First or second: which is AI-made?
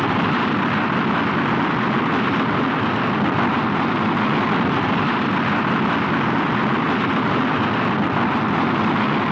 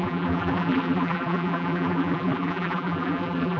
second